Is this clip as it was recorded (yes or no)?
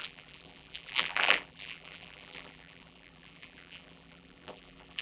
no